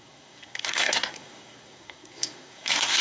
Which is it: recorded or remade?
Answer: remade